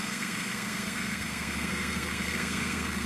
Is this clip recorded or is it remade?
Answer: remade